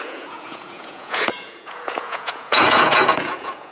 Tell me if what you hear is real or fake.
fake